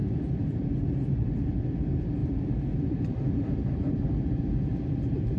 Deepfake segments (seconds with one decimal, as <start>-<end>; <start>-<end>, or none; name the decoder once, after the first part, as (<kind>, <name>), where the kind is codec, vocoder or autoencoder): 0.0-1.6 (vocoder, BigVGAN v2); 2.2-5.4